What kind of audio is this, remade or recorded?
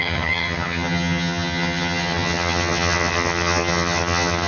remade